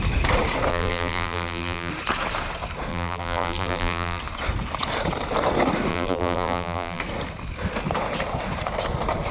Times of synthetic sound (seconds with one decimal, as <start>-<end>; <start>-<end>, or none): 0.7-1.9; 2.9-4.2; 5.9-7.0